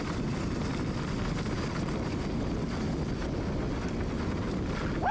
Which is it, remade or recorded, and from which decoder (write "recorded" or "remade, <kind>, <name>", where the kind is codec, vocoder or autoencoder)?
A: recorded